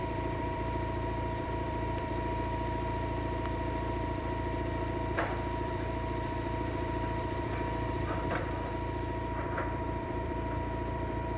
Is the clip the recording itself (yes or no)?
no